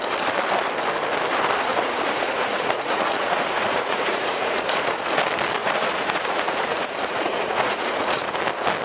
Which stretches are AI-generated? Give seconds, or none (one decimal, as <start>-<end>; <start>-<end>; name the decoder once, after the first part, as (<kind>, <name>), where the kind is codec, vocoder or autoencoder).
1.7-5.0 (vocoder, Vocos); 5.6-8.4